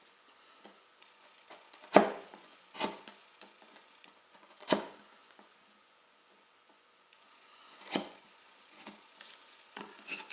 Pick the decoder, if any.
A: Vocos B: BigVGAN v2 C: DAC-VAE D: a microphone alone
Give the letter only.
A